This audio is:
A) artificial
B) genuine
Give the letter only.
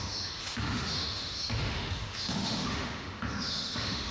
A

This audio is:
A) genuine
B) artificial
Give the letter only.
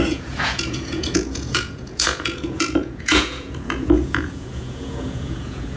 B